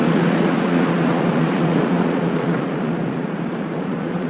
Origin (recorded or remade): remade